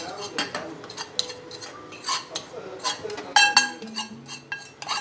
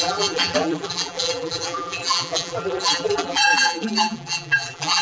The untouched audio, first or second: first